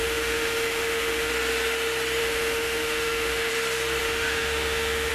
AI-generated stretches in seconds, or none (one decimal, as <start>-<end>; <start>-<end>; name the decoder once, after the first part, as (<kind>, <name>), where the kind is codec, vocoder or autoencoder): 0.0-1.3 (autoencoder, DAC-VAE); 2.2-3.5; 4.0-5.1